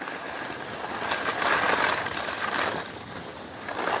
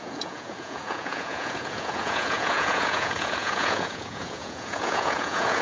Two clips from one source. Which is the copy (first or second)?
second